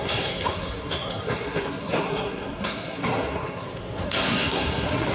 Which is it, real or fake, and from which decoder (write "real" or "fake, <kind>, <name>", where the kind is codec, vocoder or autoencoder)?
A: fake, codec, SNAC